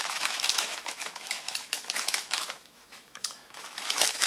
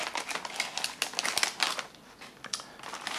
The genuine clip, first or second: second